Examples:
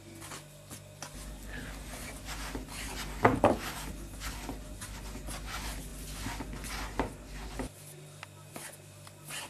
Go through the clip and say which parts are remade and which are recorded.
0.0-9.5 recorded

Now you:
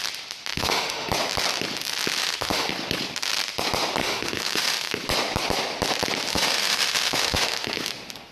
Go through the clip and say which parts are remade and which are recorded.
0.0-0.5 recorded; 0.5-1.1 remade; 1.1-2.2 recorded; 2.2-2.7 remade; 2.7-4.0 recorded; 4.0-4.9 remade; 4.9-6.3 recorded; 6.3-7.9 remade; 7.9-8.3 recorded

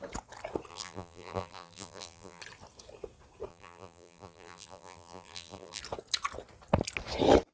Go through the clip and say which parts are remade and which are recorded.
0.0-0.7 recorded; 0.7-2.4 remade; 2.4-3.5 recorded; 3.5-5.8 remade; 5.8-7.5 recorded

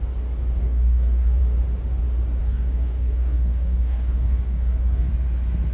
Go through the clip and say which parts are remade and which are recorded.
0.0-0.6 recorded; 0.6-1.4 remade; 1.4-2.4 recorded; 2.4-5.1 remade; 5.1-5.7 recorded

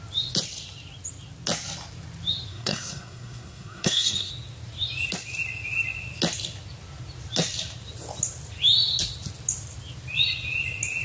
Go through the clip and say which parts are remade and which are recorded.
0.0-2.5 recorded; 2.5-4.3 remade; 4.3-11.0 recorded

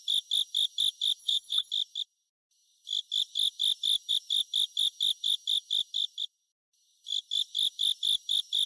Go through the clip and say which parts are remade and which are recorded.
0.0-1.2 recorded; 1.2-1.7 remade; 1.7-8.7 recorded

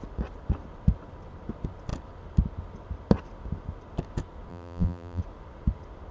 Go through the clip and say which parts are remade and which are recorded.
0.0-4.5 recorded; 4.5-5.2 remade; 5.2-6.1 recorded